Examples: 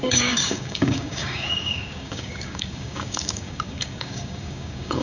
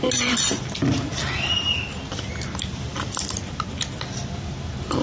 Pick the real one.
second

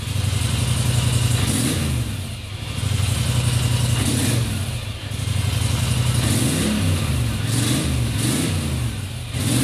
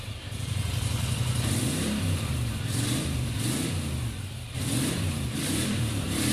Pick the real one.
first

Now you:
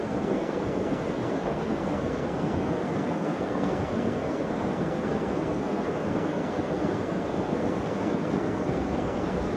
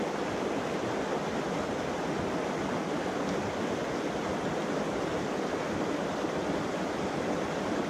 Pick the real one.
second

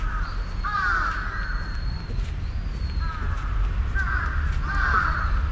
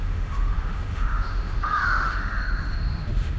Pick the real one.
first